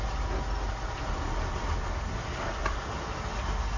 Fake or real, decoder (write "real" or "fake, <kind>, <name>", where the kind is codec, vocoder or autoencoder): real